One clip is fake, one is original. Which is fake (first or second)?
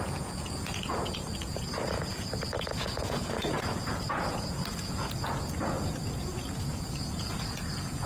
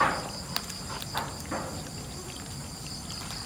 first